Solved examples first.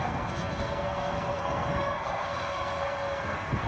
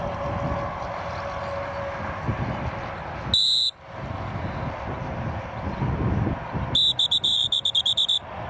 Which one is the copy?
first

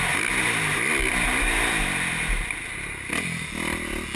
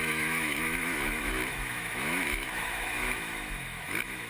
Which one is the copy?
second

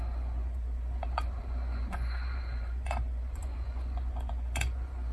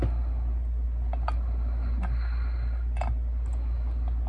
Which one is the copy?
first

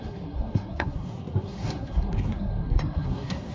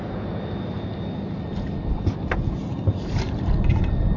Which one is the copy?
first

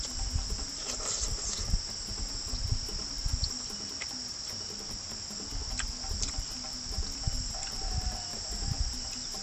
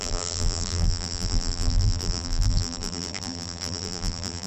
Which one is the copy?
second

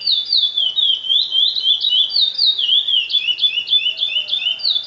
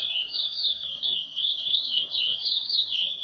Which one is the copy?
second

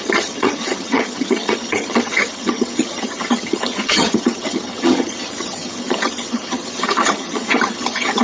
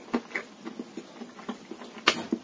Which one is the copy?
first